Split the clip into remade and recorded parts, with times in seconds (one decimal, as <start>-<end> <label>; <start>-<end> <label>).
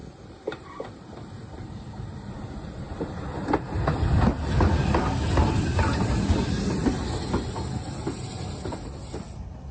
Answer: 0.0-9.7 recorded